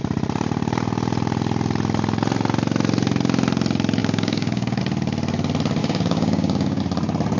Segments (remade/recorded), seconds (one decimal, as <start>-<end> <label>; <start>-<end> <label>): 0.0-4.0 recorded; 4.0-4.8 remade; 4.8-5.8 recorded; 5.8-6.8 remade; 6.8-7.4 recorded